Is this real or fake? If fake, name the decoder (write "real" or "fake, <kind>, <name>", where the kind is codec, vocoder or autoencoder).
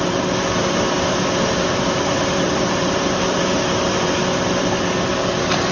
fake, vocoder, BigVGAN v2